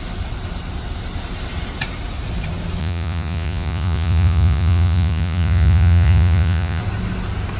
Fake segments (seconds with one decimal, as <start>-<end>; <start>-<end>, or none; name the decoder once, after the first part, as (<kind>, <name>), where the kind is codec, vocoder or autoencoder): 2.8-6.8 (vocoder, Vocos)